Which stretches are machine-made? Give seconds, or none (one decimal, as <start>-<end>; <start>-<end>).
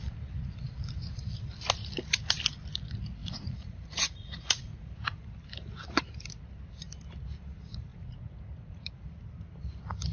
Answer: 3.2-5.2; 7.9-8.9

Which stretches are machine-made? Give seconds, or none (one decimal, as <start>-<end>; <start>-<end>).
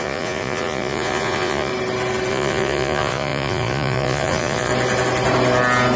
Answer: 0.0-1.7; 2.3-4.7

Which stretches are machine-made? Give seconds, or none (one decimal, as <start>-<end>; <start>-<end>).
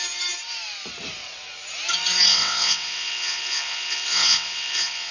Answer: 2.3-5.1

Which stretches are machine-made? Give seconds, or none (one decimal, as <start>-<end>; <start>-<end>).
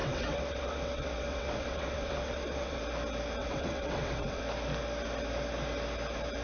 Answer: 0.0-2.8; 3.4-4.4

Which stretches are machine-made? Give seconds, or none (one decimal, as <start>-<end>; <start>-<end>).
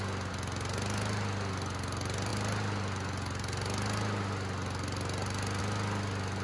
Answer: none